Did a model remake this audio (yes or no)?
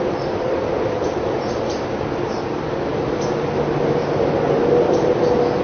no